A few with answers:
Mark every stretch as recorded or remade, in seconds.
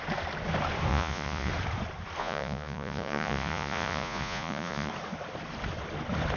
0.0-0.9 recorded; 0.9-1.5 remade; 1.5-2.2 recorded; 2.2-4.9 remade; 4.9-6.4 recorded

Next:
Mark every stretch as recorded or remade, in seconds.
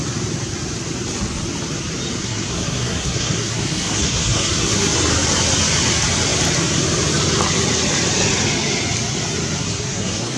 0.0-2.2 recorded; 2.2-5.1 remade; 5.1-9.6 recorded; 9.6-10.4 remade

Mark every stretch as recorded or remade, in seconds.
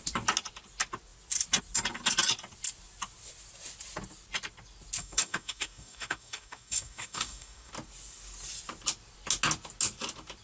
0.0-5.0 recorded; 5.0-7.7 remade; 7.7-10.4 recorded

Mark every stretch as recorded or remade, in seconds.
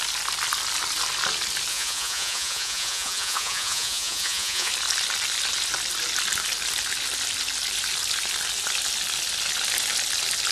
0.0-1.7 recorded; 1.7-4.7 remade; 4.7-10.5 recorded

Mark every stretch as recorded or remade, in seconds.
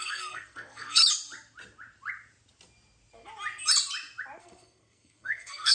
0.0-1.0 remade; 1.0-4.4 recorded; 4.4-5.7 remade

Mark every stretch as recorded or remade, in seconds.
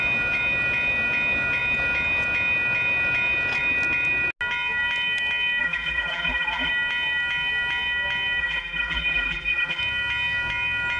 0.0-5.6 recorded; 5.6-6.7 remade; 6.7-8.4 recorded; 8.4-9.8 remade; 9.8-11.0 recorded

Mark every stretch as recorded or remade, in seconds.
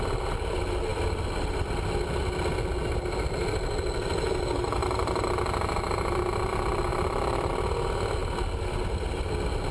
0.0-0.9 recorded; 0.9-1.7 remade; 1.7-4.8 recorded; 4.8-5.3 remade; 5.3-6.9 recorded; 6.9-7.5 remade; 7.5-9.7 recorded